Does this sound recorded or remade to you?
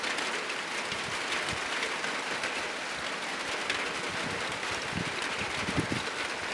recorded